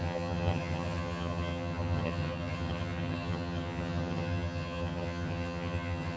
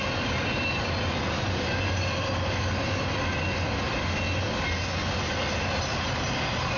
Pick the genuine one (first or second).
second